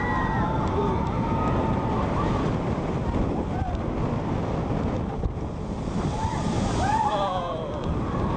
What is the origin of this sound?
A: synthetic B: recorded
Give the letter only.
B